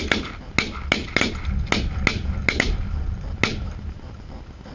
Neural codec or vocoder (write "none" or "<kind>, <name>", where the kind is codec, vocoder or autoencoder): none